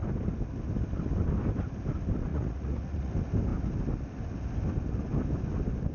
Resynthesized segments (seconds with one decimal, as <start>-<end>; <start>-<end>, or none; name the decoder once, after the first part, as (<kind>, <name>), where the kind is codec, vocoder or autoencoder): 2.3-3.1 (vocoder, Vocos)